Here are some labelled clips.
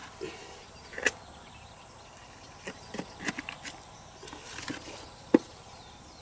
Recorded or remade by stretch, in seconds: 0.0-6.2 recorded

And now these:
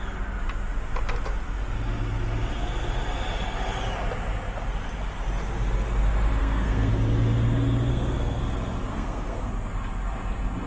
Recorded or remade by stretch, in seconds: 0.0-6.4 recorded; 6.4-6.9 remade; 6.9-7.9 recorded; 7.9-8.4 remade; 8.4-8.9 recorded; 8.9-9.5 remade; 9.5-10.7 recorded

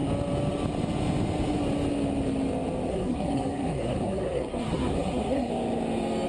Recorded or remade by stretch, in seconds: 0.0-2.9 recorded; 2.9-5.5 remade; 5.5-6.3 recorded

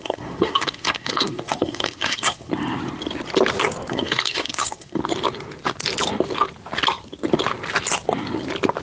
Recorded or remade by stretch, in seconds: 0.0-2.5 remade; 2.5-3.9 recorded; 3.9-5.0 remade; 5.0-8.8 recorded

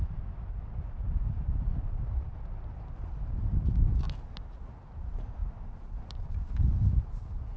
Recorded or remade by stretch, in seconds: 0.0-7.6 remade

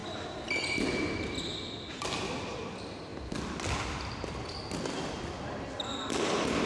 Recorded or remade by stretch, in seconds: 0.0-6.7 recorded